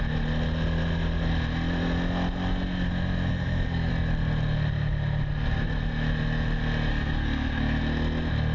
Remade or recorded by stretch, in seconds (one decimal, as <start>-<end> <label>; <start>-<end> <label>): 0.0-3.3 recorded; 3.3-3.9 remade; 3.9-6.9 recorded; 6.9-7.8 remade; 7.8-8.5 recorded